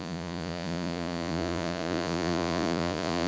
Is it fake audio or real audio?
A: fake